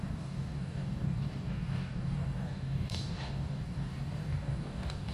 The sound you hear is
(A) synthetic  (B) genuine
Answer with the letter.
A